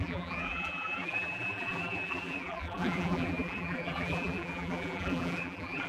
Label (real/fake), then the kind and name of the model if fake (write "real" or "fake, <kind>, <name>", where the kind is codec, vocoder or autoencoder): fake, vocoder, BigVGAN v2